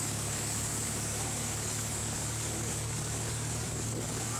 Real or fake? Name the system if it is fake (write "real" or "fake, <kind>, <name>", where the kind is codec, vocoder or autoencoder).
fake, codec, DAC